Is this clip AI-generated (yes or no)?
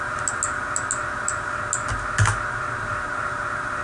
no